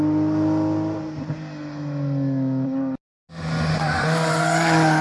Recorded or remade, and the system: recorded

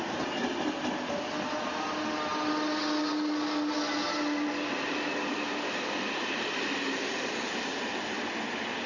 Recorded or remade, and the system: recorded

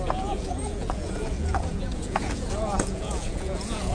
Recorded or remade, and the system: remade, vocoder, Vocos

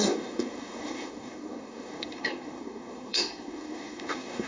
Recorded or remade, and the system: remade, codec, SNAC